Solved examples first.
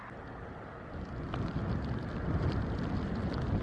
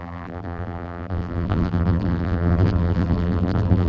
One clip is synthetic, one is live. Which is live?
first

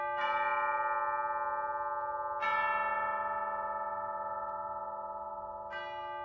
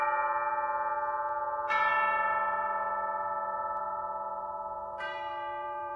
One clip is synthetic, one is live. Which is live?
first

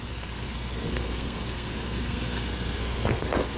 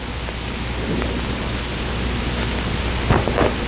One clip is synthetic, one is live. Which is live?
second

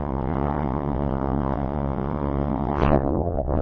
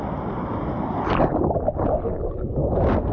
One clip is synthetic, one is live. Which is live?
second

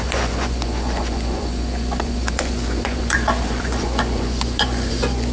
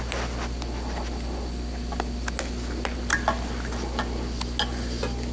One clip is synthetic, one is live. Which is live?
second